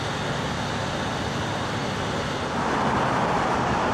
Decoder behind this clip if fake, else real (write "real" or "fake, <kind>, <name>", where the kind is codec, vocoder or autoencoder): real